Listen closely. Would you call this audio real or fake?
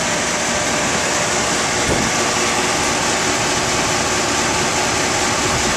real